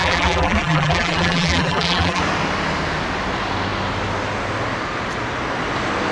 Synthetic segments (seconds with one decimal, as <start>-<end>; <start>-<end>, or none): 0.0-2.2